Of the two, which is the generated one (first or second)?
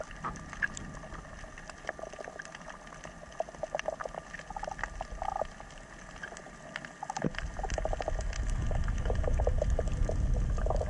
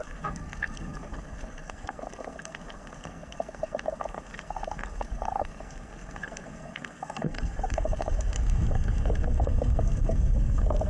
second